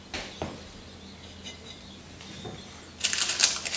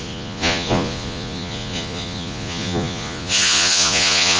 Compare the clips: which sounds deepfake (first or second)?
second